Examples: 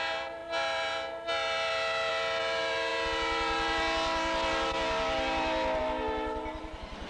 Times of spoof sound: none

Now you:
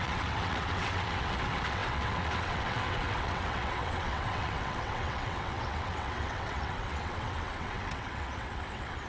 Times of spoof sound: 0.0-9.1 (vocoder, WaveNeXt)

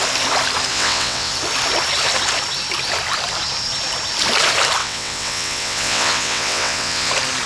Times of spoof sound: 0.7-1.3 (vocoder, WaveNeXt); 4.8-7.1

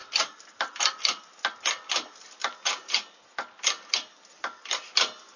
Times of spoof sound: none